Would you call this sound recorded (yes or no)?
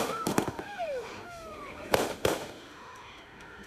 no